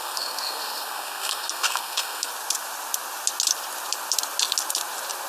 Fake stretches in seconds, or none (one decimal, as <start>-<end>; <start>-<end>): 0.0-2.3